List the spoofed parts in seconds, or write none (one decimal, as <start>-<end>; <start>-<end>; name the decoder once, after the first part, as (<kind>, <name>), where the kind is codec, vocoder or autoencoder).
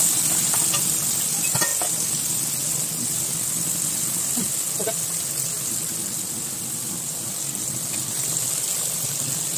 none